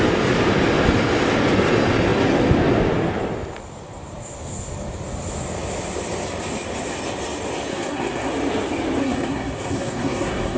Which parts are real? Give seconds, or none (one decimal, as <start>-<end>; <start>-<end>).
0.0-7.7; 8.3-9.0